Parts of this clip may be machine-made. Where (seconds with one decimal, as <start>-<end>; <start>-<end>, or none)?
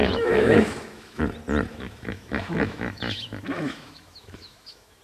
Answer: 0.0-1.2; 1.7-5.0